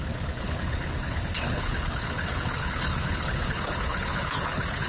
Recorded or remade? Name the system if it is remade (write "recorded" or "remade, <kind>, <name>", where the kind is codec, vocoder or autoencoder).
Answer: remade, codec, HILCodec